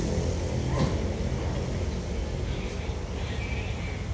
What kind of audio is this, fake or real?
real